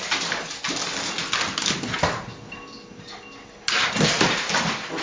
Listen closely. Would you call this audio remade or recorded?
recorded